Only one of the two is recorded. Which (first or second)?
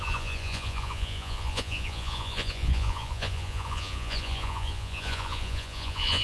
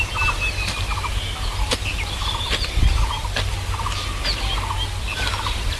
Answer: second